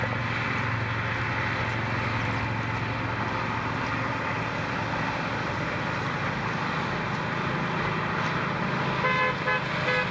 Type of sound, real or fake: real